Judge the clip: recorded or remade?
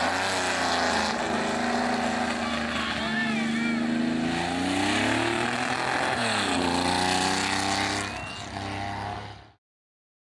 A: recorded